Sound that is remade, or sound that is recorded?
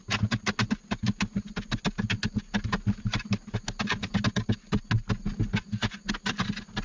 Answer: recorded